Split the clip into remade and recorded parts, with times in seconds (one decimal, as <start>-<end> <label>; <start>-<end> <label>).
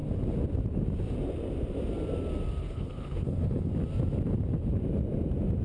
0.0-2.6 recorded; 2.6-3.7 remade; 3.7-5.6 recorded